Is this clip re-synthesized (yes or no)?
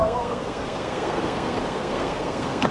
yes